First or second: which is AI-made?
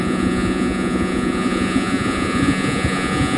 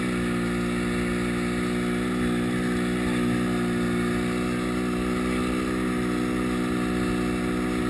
first